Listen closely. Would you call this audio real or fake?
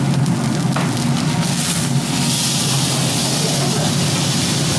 real